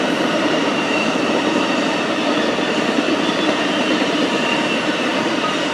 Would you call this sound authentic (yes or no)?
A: no